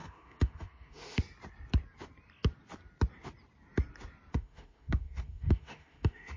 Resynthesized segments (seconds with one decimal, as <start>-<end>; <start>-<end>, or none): 0.0-1.2; 4.3-6.4